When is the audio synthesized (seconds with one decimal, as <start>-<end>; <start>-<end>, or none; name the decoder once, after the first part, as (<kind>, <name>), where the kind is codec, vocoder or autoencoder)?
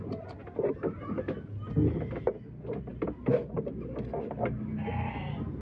none